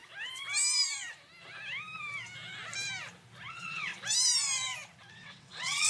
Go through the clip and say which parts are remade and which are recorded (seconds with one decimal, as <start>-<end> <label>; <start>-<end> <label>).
0.0-3.5 recorded; 3.5-3.9 remade; 3.9-5.1 recorded; 5.1-5.9 remade